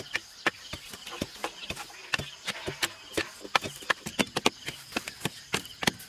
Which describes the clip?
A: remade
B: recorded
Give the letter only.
B